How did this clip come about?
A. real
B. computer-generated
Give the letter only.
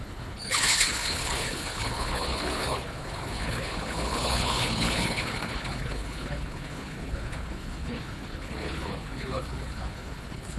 B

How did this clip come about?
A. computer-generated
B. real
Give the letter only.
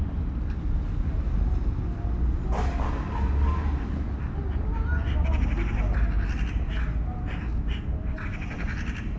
B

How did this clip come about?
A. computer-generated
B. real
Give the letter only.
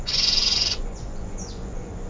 A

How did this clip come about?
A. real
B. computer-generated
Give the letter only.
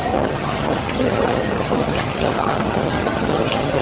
B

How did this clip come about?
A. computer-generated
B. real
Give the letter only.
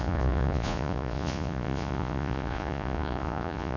A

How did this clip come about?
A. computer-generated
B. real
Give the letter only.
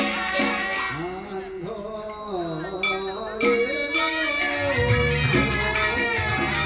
B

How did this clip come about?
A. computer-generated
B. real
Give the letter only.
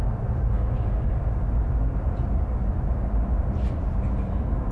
B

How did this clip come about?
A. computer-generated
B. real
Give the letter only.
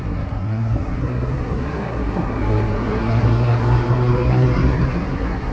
A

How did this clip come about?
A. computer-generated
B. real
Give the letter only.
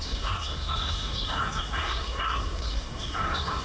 A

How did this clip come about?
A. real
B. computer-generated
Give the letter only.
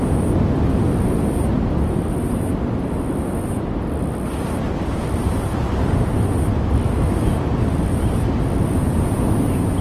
A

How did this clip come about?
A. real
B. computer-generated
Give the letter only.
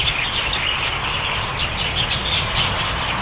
A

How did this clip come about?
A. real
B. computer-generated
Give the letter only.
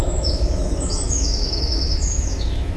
B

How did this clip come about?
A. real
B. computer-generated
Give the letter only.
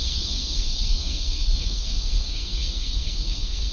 B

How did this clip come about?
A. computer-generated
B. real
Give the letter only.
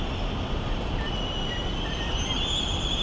B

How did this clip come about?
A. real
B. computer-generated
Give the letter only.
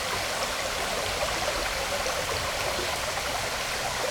A